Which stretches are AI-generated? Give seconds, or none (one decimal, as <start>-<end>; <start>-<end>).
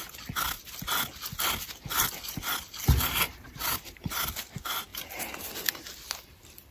3.3-4.2; 4.9-5.5